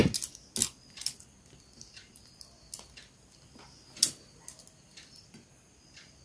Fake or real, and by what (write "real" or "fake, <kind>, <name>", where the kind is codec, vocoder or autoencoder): real